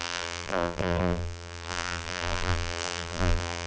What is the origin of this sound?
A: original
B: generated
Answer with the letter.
B